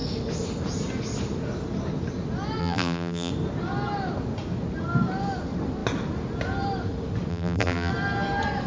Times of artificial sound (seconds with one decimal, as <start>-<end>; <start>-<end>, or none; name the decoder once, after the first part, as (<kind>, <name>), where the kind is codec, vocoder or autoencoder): 2.6-3.3 (vocoder, BigVGAN v2); 7.3-7.9